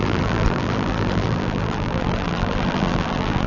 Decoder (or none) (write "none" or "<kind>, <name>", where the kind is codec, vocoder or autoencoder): vocoder, BigVGAN v2